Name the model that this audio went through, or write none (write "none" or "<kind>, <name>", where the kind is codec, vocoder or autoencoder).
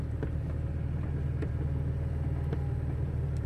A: none